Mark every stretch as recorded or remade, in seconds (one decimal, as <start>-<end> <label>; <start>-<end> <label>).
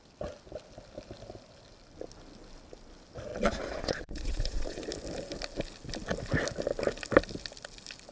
0.0-3.3 recorded; 3.3-4.8 remade; 4.8-8.1 recorded